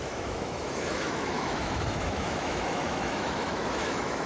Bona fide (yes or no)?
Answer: no